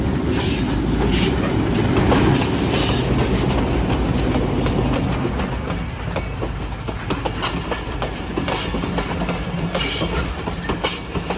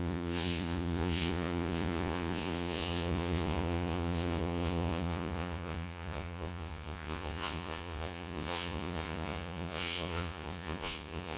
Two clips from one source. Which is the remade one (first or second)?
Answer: second